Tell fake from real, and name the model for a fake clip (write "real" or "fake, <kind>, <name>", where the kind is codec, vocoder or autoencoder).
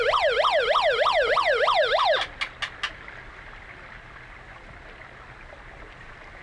real